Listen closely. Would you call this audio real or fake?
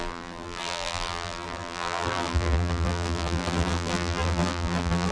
fake